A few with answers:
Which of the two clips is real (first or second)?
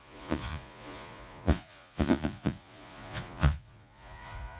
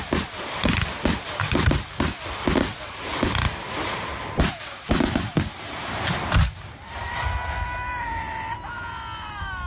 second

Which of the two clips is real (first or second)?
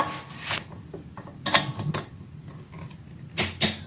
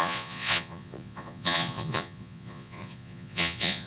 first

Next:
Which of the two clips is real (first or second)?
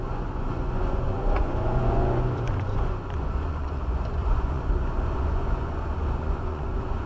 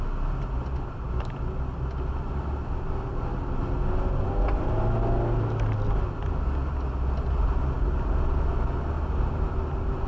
second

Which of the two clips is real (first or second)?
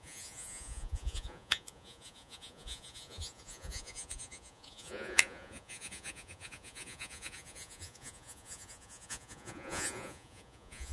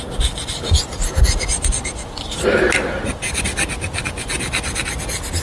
second